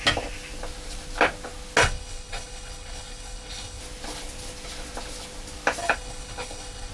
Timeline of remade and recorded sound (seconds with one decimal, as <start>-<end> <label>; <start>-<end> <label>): 0.0-1.8 recorded; 1.8-3.8 remade; 3.8-5.8 recorded; 5.8-6.9 remade